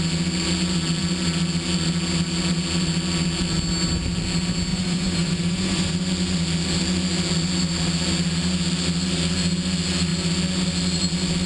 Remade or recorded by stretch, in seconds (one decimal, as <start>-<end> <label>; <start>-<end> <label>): 0.0-4.7 recorded; 4.7-5.9 remade; 5.9-11.5 recorded